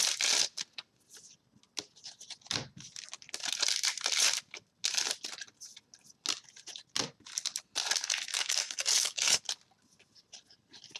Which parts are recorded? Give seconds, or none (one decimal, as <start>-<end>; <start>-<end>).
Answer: 0.0-8.3; 9.4-11.0